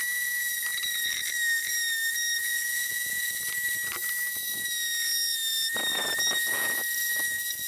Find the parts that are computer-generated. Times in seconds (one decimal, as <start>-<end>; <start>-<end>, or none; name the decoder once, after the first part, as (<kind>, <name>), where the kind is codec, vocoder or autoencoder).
2.4-3.4 (vocoder, Vocos); 5.9-6.8